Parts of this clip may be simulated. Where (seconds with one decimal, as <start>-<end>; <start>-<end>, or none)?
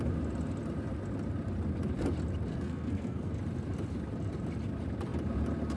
2.5-3.3